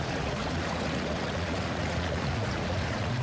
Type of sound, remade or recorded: remade